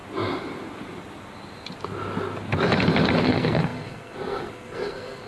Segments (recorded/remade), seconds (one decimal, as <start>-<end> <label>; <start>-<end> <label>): 0.0-3.2 recorded; 3.2-5.3 remade